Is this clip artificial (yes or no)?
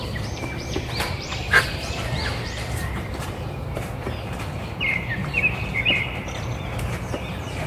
yes